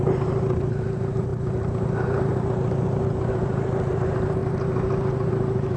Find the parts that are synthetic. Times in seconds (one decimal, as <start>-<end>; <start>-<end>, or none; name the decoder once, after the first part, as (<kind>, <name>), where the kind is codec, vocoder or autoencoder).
0.0-2.3 (vocoder, BigVGAN v2); 3.9-4.4; 5.3-5.8